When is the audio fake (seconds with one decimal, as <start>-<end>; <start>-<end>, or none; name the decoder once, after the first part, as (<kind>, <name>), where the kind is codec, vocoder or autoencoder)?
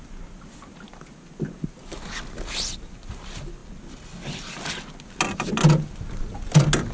none